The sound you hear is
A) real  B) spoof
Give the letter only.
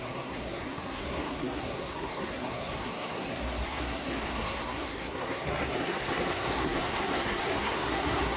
B